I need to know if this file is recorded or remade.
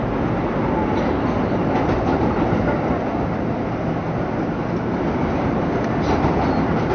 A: recorded